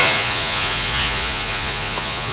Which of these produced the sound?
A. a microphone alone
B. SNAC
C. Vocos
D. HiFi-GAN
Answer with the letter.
C